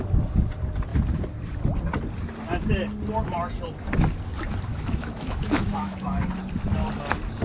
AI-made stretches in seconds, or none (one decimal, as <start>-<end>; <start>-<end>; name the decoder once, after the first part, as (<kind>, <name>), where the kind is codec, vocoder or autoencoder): 4.7-6.2 (autoencoder, DAC-VAE)